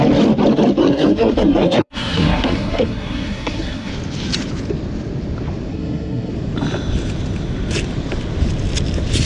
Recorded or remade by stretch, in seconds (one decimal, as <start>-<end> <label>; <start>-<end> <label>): 0.0-0.8 recorded; 0.8-3.9 remade; 3.9-5.7 recorded; 5.7-6.3 remade; 6.3-9.3 recorded

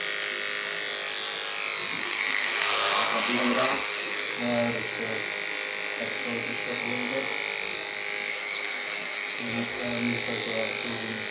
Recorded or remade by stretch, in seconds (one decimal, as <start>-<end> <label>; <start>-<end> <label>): 0.0-2.0 recorded; 2.0-4.3 remade; 4.3-8.3 recorded; 8.3-9.8 remade; 9.8-11.3 recorded

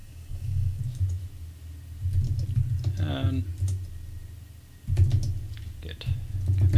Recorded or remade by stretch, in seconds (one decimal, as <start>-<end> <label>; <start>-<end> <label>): 0.0-0.8 remade; 0.8-6.8 recorded